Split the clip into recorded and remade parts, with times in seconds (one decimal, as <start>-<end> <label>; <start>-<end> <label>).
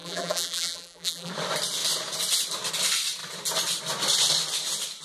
0.0-1.3 remade; 1.3-5.0 recorded